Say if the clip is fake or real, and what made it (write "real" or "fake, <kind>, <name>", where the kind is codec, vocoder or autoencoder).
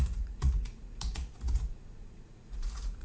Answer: fake, vocoder, Vocos